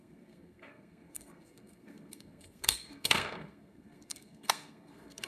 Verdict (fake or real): fake